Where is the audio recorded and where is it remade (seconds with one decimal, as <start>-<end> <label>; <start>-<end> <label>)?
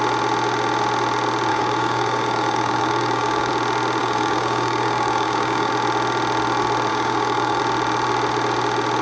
0.0-1.5 recorded; 1.5-3.5 remade; 3.5-4.0 recorded; 4.0-5.7 remade; 5.7-6.9 recorded; 6.9-7.6 remade; 7.6-9.0 recorded